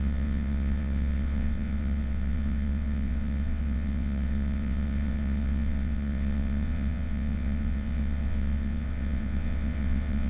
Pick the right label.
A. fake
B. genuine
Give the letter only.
A